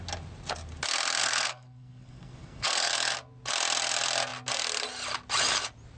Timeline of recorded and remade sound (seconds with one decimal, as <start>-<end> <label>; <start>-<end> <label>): 0.0-1.2 recorded; 1.2-2.9 remade; 2.9-6.0 recorded